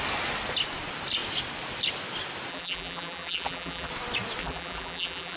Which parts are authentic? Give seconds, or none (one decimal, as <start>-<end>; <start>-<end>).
0.0-2.5; 3.9-4.4